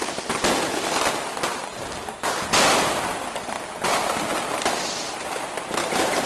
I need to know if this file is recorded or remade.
recorded